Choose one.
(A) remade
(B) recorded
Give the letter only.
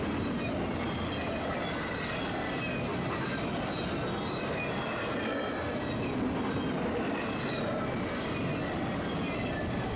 B